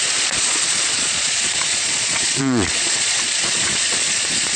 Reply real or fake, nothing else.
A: fake